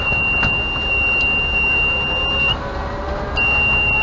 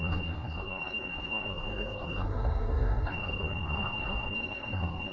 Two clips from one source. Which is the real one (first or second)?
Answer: first